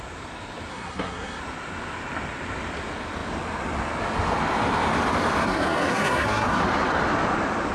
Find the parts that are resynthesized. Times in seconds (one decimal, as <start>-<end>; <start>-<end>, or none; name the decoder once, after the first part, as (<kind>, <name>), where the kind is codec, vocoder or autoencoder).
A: 0.7-1.4 (codec, SNAC); 5.4-6.6